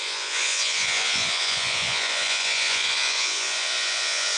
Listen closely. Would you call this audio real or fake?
fake